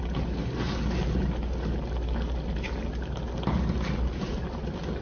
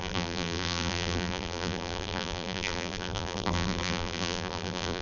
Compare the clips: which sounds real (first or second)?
first